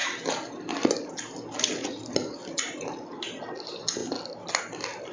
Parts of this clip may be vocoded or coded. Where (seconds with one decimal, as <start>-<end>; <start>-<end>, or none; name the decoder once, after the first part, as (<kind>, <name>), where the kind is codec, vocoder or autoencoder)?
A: none